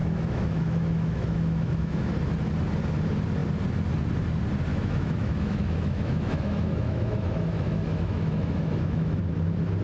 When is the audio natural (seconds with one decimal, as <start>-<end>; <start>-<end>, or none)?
2.1-4.7; 9.2-9.8